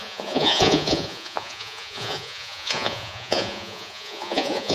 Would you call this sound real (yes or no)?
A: no